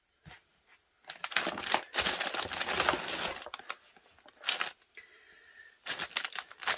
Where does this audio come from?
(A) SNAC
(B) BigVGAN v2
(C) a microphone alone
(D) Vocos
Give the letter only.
C